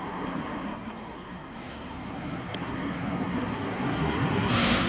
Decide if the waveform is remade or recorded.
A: remade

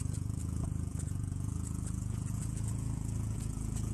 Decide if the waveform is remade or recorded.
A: remade